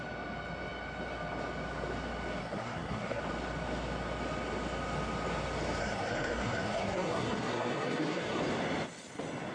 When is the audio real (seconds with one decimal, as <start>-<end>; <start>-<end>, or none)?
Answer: 0.0-2.4; 3.2-5.8; 8.4-9.5